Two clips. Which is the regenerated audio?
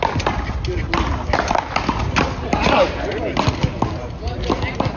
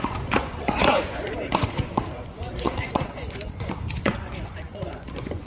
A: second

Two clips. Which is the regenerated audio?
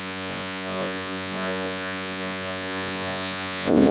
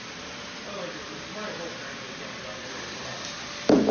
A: first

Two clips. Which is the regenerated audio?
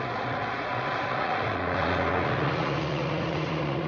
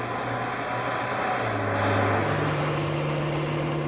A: first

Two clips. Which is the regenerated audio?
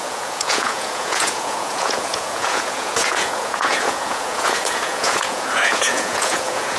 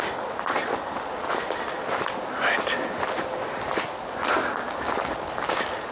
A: first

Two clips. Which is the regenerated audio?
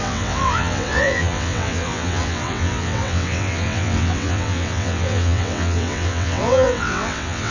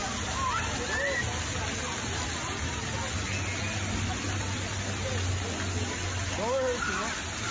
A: first